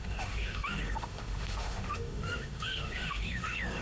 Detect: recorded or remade remade